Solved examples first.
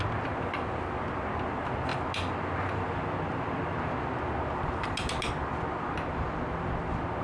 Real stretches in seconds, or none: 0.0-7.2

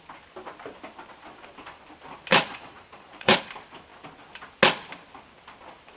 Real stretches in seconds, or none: 0.0-2.3; 3.5-6.0